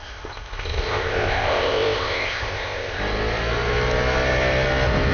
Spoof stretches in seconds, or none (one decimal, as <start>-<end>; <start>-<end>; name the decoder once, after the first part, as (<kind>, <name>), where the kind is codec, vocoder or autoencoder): 0.0-3.0 (codec, ZipCodec)